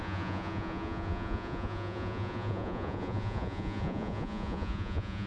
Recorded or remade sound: remade